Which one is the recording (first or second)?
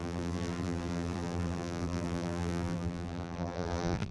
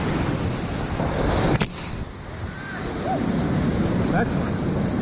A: second